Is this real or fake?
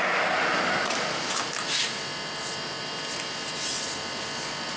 real